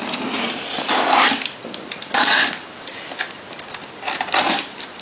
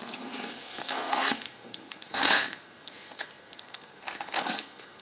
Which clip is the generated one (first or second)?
second